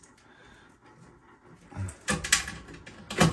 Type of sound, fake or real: real